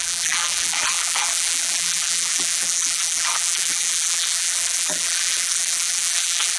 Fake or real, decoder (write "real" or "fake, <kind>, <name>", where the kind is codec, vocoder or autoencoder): fake, vocoder, BigVGAN v2